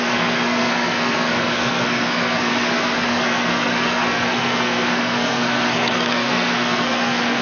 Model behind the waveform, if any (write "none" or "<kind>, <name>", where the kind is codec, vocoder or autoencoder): codec, SNAC